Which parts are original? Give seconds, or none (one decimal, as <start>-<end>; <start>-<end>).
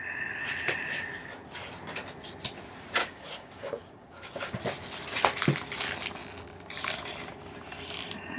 0.0-3.0; 4.6-8.4